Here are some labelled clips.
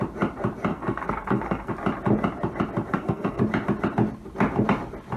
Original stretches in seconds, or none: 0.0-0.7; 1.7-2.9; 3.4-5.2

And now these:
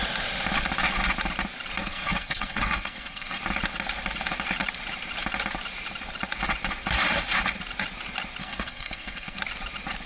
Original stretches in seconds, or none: 0.0-1.8; 3.4-8.4; 9.4-10.1

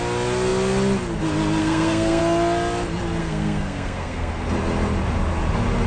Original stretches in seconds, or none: 0.0-1.6; 2.2-3.2; 4.3-5.9

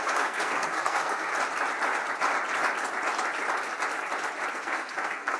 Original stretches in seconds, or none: 1.3-4.5

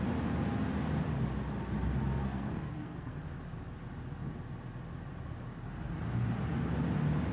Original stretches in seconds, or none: 0.0-2.2; 3.2-7.3